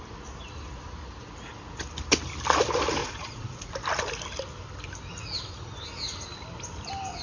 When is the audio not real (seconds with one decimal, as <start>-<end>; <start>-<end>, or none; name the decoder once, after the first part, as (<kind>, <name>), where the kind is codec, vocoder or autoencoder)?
3.0-3.7 (vocoder, Vocos)